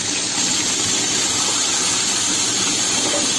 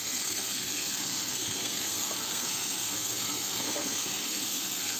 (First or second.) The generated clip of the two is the second